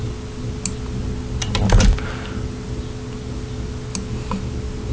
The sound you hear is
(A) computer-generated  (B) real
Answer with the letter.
B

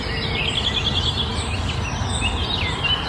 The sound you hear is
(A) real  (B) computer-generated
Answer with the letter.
A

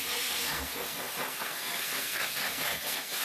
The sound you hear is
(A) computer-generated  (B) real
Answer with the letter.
A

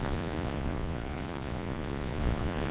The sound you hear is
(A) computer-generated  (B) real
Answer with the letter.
A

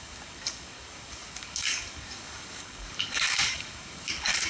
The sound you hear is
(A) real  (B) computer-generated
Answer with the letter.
B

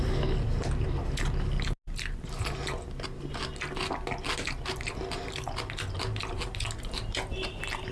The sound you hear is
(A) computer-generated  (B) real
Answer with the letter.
B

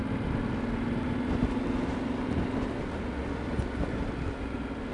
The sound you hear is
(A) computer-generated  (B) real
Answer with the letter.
B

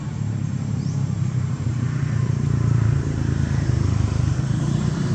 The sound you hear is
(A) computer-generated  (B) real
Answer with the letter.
A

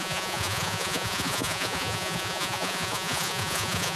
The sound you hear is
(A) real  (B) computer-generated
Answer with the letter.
B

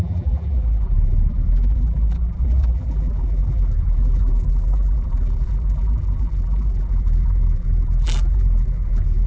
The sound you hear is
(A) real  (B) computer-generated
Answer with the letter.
B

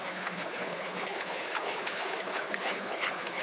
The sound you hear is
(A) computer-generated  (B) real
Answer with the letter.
A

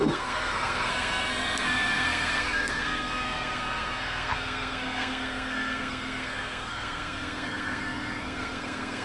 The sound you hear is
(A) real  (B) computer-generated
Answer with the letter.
B